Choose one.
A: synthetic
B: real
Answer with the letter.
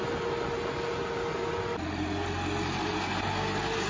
B